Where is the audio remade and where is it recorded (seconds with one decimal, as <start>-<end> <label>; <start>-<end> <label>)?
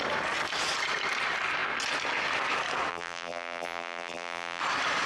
0.0-2.9 recorded; 2.9-4.6 remade; 4.6-5.1 recorded